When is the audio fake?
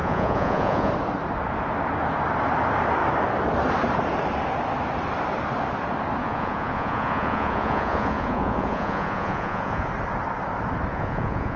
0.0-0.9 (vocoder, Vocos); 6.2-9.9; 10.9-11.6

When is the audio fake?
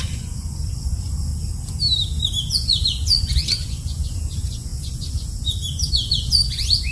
0.0-1.3 (vocoder, Vocos); 2.3-6.9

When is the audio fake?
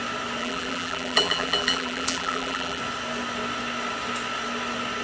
0.4-2.8 (vocoder, BigVGAN v2)